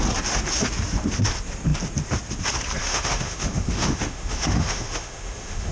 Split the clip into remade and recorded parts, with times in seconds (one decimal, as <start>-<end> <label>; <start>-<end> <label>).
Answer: 0.0-2.8 recorded; 2.8-5.7 remade